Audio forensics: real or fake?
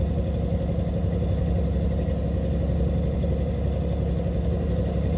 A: real